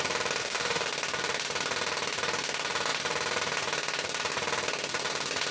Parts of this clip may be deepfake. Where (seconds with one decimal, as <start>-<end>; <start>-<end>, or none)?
0.4-0.9